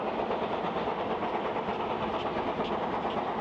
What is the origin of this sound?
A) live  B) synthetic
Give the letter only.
A